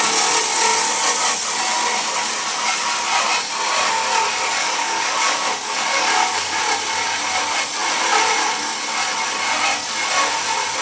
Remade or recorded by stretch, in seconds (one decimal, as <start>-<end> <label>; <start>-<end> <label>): 0.0-4.6 recorded; 4.6-6.6 remade; 6.6-10.8 recorded